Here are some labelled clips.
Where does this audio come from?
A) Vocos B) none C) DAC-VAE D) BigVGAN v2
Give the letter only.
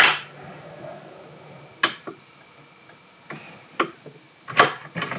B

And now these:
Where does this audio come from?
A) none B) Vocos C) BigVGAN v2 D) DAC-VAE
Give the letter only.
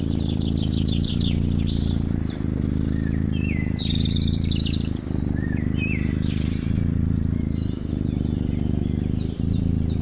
C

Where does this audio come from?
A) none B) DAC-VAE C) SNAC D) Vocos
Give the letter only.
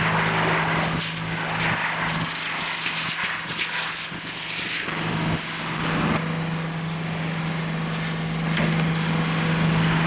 A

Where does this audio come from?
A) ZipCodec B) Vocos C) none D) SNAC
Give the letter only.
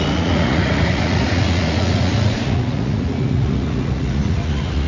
B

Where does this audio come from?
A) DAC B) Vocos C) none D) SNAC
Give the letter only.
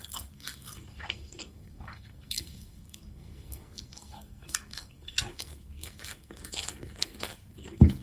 D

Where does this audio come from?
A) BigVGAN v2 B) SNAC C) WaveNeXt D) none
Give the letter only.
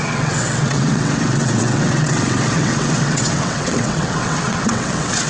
C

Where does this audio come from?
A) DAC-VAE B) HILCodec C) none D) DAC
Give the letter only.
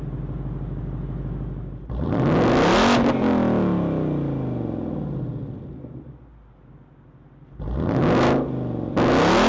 C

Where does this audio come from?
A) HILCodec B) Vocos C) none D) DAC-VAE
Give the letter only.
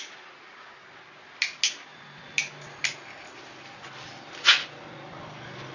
C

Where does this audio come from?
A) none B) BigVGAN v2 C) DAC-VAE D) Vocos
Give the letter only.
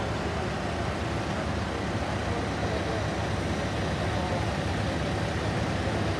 A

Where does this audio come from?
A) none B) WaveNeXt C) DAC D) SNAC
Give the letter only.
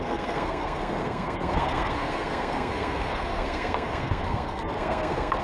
D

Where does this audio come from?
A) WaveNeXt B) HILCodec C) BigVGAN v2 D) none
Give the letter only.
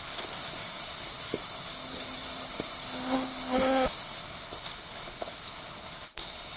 B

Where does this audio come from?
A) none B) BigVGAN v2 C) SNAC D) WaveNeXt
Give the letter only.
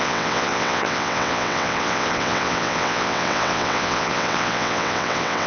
D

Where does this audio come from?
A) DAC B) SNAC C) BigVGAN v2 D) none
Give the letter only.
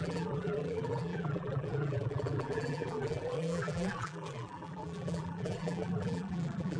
C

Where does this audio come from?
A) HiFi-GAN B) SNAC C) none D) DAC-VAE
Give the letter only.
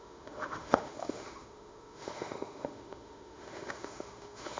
D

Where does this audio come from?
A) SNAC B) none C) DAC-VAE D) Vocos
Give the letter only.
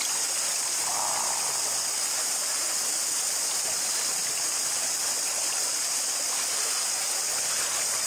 B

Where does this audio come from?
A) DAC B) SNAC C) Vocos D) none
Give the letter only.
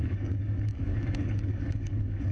A